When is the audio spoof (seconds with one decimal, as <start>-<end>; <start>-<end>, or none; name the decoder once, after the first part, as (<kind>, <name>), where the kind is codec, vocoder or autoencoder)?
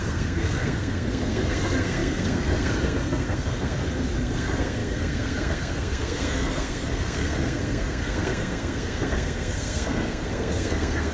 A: 0.0-11.1 (codec, SNAC)